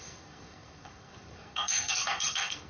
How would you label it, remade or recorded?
remade